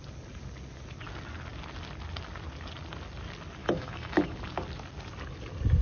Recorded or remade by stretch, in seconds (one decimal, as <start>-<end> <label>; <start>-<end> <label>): 0.0-3.6 recorded; 3.6-4.4 remade; 4.4-5.8 recorded